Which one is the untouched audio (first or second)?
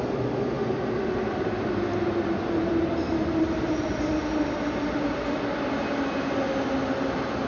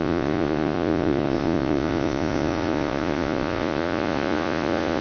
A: first